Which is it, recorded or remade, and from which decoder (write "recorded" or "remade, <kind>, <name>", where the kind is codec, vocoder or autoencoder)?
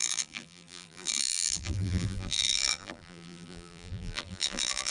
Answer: remade, vocoder, BigVGAN v2